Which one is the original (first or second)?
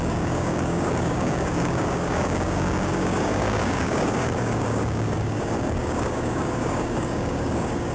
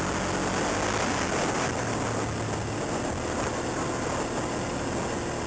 second